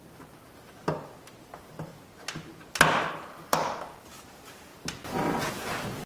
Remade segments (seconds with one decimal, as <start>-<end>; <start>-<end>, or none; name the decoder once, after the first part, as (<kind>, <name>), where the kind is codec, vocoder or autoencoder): none